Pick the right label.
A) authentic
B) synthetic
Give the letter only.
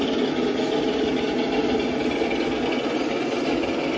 A